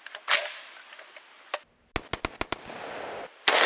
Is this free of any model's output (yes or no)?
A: yes